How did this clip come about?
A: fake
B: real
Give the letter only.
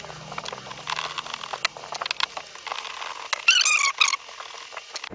B